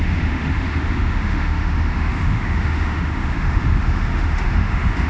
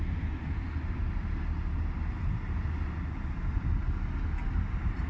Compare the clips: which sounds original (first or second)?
second